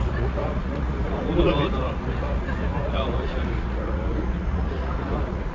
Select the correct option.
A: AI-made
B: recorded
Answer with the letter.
A